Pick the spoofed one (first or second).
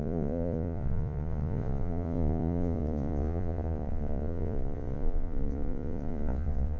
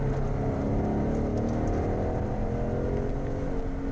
first